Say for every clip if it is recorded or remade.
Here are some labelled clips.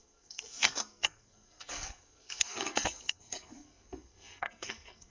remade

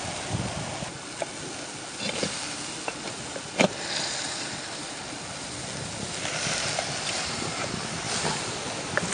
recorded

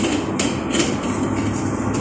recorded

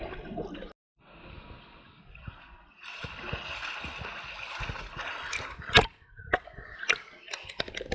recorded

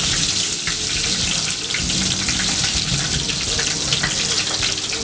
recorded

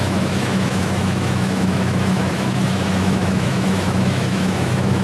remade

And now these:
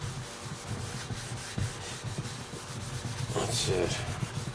recorded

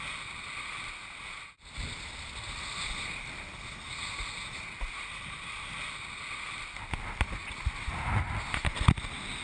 recorded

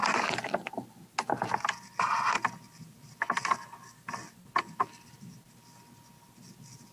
recorded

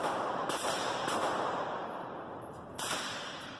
remade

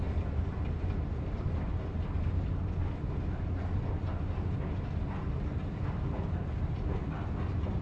recorded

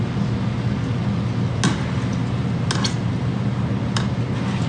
recorded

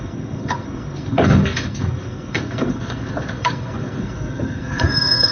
remade